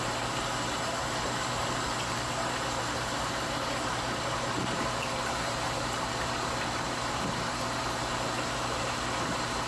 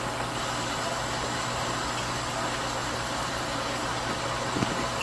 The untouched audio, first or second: second